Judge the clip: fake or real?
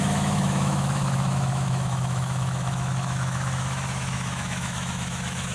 fake